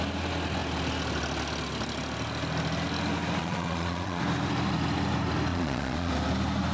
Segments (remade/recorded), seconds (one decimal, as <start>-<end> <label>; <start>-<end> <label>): 0.0-3.4 recorded; 3.4-4.2 remade; 4.2-5.5 recorded; 5.5-6.1 remade; 6.1-6.7 recorded